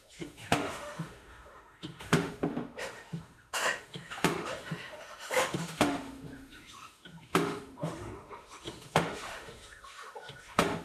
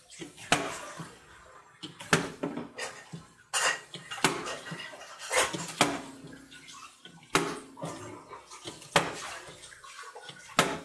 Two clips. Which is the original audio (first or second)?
second